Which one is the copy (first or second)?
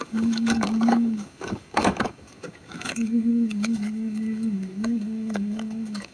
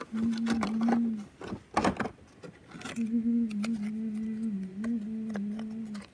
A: first